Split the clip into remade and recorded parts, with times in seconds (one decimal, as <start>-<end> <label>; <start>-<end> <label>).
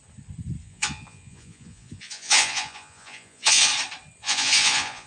0.0-0.6 recorded; 0.6-3.7 remade; 3.7-4.2 recorded; 4.2-5.1 remade